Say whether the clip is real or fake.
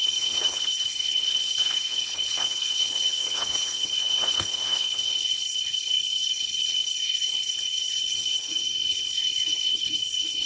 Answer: fake